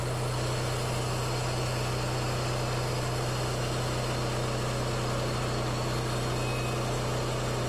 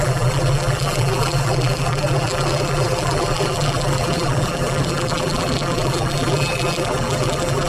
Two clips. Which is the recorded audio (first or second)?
first